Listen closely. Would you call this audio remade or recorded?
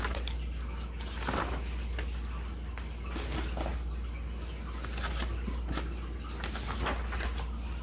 recorded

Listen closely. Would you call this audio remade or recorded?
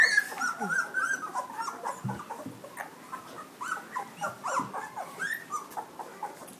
recorded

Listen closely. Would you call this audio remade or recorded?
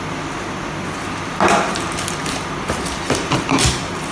recorded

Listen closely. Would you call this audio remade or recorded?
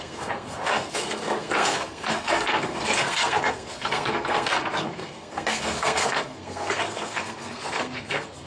remade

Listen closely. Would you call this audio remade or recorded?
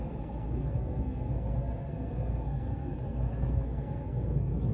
remade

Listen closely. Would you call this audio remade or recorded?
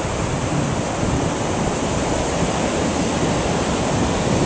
recorded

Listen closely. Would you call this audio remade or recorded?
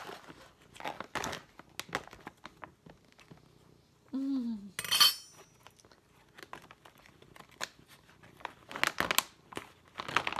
recorded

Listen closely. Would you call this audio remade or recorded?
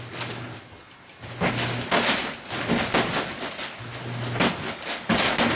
recorded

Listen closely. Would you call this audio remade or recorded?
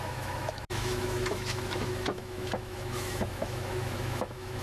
remade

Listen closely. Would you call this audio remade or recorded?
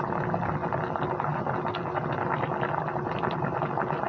recorded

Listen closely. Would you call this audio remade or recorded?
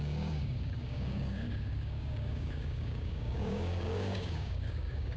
remade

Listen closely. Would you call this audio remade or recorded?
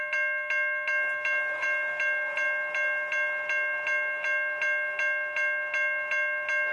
recorded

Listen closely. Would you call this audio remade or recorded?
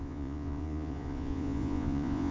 remade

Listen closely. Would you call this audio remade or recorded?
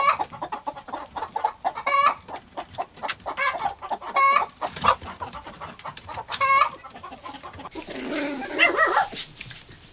recorded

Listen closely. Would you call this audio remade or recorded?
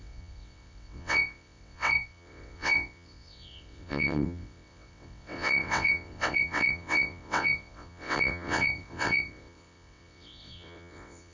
remade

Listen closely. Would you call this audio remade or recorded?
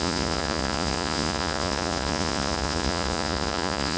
remade